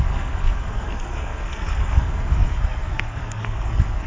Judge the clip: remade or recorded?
remade